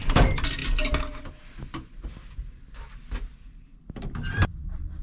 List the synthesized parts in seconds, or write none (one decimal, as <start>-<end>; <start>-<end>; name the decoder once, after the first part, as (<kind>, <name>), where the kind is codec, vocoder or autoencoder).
0.0-5.0 (vocoder, BigVGAN v2)